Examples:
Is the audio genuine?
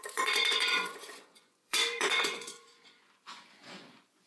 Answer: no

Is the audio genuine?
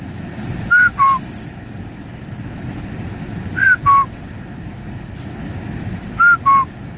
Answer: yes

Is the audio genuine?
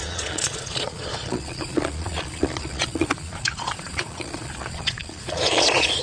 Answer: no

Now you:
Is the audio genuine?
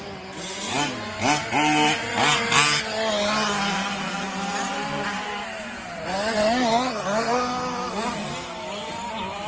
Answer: yes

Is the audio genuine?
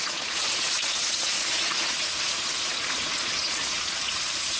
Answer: no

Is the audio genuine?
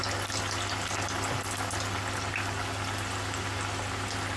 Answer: yes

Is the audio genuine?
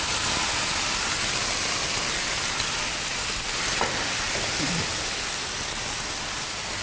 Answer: yes